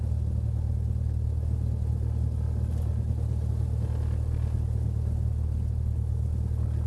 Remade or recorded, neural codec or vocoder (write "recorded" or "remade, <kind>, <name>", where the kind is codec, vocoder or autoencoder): recorded